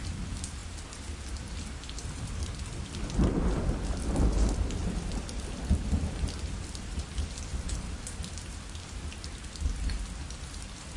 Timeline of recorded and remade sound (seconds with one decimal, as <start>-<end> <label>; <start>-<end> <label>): 0.0-11.0 recorded